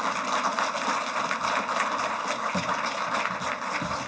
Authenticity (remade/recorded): recorded